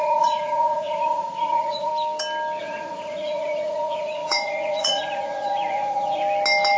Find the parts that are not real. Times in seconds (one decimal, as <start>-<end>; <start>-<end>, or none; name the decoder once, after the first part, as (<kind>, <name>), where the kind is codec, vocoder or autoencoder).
0.0-1.9 (vocoder, Vocos); 2.6-6.2